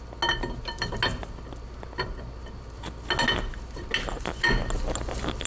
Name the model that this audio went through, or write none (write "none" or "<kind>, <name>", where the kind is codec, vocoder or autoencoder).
none